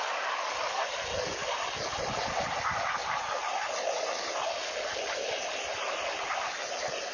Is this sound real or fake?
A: real